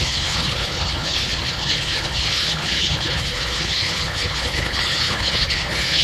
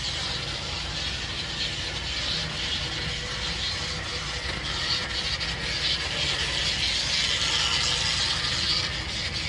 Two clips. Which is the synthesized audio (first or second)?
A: first